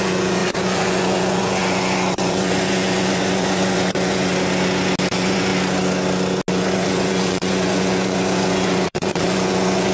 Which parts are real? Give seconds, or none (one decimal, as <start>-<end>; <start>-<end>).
4.3-5.1; 5.5-6.5